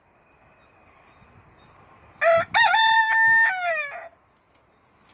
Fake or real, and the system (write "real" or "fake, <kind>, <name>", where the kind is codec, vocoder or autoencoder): real